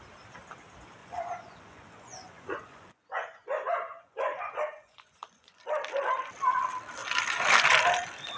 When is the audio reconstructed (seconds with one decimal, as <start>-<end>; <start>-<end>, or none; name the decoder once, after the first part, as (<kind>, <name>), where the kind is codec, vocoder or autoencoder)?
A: 1.0-5.6 (vocoder, Vocos)